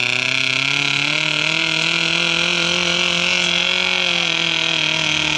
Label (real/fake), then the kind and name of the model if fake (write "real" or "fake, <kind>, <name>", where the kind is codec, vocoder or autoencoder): real